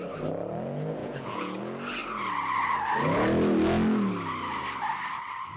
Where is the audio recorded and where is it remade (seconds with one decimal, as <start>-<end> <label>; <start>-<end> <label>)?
0.0-1.0 recorded; 1.0-1.6 remade; 1.6-5.6 recorded